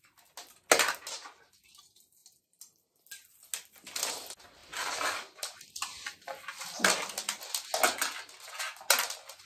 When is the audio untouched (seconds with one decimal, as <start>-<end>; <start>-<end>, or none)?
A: 0.0-4.6; 7.4-9.5